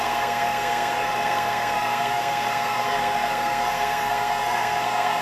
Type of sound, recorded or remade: remade